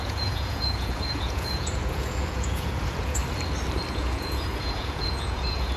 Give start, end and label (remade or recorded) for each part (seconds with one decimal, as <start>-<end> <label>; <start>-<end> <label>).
0.0-3.2 remade; 3.2-3.9 recorded; 3.9-5.8 remade